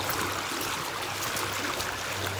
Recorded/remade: recorded